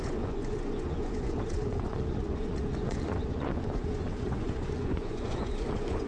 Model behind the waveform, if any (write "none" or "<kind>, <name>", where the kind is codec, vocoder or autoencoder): vocoder, Vocos